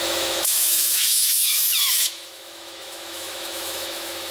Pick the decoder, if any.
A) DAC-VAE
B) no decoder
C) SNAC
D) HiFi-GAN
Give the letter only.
A